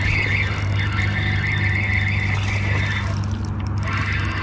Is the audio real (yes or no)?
yes